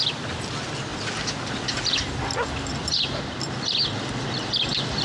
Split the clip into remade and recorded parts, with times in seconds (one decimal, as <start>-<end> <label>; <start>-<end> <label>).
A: 0.0-5.0 recorded